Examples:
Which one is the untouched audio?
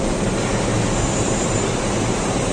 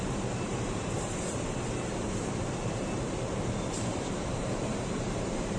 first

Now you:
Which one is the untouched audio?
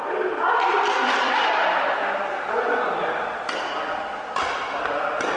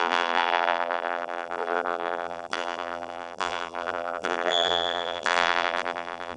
first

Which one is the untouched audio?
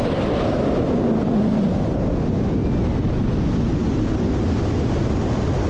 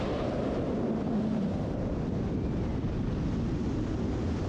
first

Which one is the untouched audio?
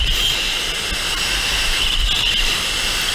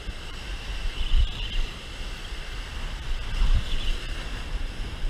first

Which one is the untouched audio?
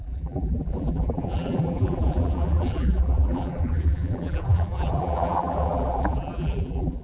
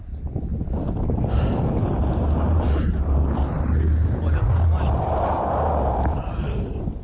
second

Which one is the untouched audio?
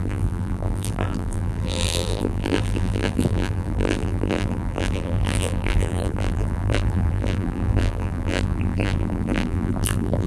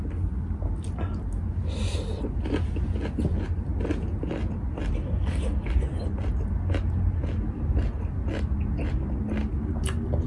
second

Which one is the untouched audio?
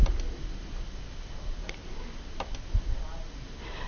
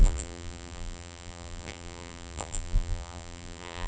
first